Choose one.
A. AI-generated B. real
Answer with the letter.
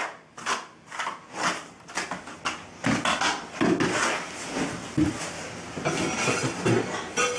B